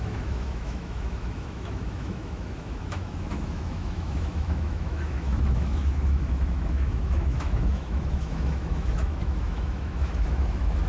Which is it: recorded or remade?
remade